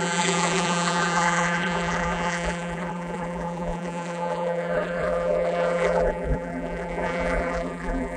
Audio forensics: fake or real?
fake